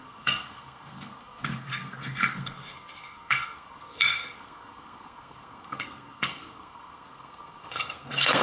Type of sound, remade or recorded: remade